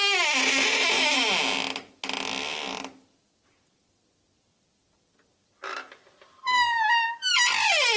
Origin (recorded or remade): recorded